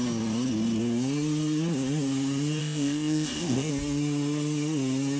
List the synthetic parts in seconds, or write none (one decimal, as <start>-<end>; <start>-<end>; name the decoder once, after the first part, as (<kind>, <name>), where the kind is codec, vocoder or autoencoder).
2.6-3.7 (codec, ZipCodec)